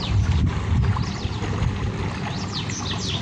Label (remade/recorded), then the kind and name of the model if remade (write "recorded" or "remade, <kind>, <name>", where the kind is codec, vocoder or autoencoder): recorded